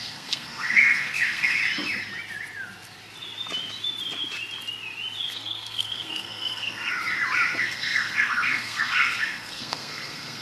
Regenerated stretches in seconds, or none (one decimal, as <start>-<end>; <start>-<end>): 0.0-1.6; 5.3-6.9; 7.6-10.4